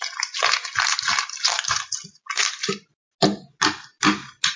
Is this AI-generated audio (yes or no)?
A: no